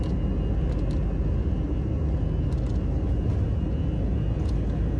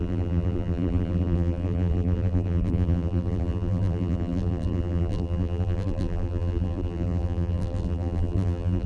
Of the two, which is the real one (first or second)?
first